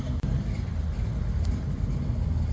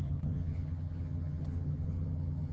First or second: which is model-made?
second